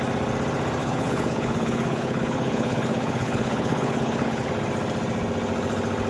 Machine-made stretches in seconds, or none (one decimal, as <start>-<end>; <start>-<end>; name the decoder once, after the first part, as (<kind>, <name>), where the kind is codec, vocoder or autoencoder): 0.8-4.5 (codec, HILCodec)